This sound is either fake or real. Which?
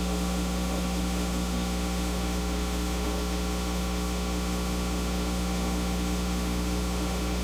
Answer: fake